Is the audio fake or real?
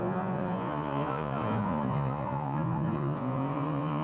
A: fake